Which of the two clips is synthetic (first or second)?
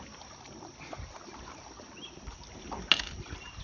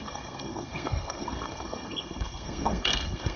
second